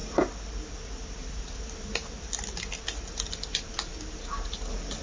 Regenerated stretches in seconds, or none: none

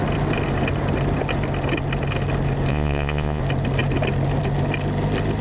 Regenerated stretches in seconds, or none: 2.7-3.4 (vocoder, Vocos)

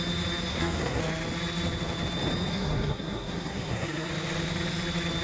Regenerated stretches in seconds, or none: 0.5-1.0 (codec, SNAC); 2.5-4.1

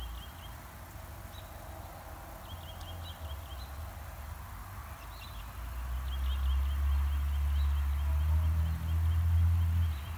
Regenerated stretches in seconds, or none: none